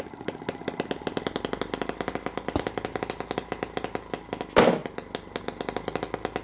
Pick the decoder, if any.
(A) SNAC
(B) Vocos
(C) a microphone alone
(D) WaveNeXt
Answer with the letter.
C